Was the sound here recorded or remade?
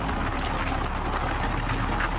recorded